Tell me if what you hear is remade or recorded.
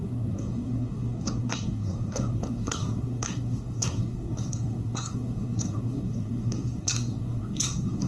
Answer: remade